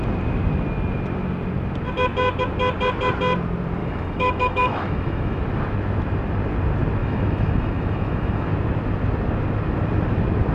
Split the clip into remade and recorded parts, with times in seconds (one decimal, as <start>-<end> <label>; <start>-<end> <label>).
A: 0.0-3.8 recorded; 3.8-5.4 remade; 5.4-7.0 recorded; 7.0-8.5 remade; 8.5-10.5 recorded